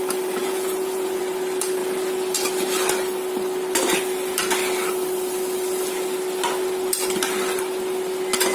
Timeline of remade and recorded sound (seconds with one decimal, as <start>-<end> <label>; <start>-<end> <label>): 0.0-0.4 recorded; 0.4-1.2 remade; 1.2-8.5 recorded